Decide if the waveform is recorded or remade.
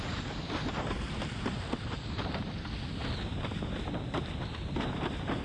recorded